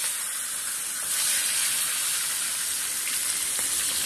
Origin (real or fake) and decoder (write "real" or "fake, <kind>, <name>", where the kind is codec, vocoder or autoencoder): real